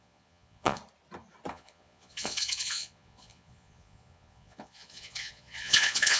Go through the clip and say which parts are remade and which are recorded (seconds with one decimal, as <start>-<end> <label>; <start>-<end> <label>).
0.0-0.8 remade; 0.8-1.5 recorded; 1.5-6.2 remade